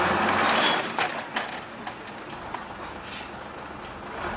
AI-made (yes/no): no